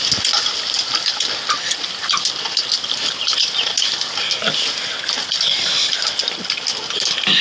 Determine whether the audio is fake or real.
real